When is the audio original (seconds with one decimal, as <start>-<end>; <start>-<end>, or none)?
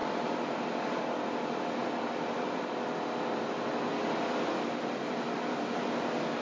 1.3-1.8; 5.6-6.4